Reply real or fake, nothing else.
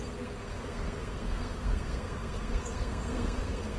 fake